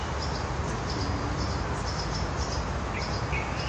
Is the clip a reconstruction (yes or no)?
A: no